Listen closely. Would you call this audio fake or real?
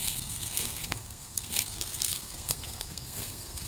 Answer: fake